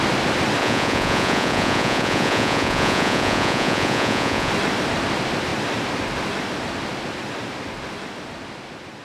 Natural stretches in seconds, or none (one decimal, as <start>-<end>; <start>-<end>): 0.0-0.6; 4.5-9.0